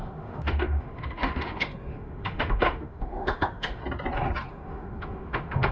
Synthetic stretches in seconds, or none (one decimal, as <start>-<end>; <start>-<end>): 0.0-3.8; 4.5-5.7